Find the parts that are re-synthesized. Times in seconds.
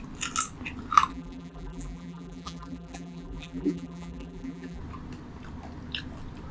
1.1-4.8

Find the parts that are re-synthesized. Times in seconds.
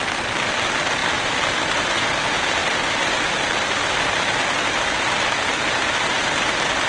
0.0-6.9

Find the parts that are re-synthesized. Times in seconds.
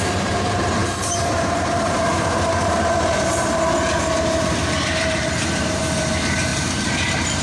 0.0-7.4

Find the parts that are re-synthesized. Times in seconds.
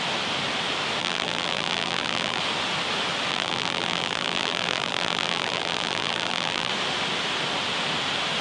1.0-2.4; 3.3-6.7